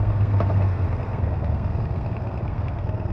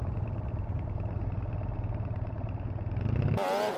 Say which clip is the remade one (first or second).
first